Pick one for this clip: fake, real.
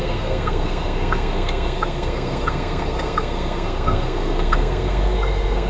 fake